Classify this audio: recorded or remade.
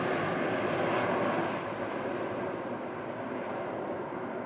recorded